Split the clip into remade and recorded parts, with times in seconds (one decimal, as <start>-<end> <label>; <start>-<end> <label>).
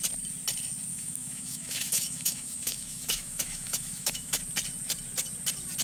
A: 0.0-0.9 recorded; 0.9-4.4 remade; 4.4-5.8 recorded